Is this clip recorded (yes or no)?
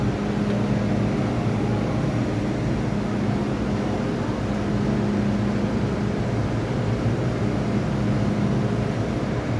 yes